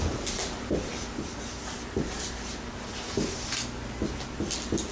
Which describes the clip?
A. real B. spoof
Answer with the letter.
A